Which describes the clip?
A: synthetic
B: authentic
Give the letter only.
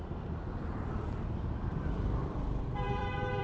A